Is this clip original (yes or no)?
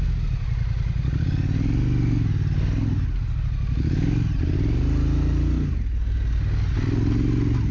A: yes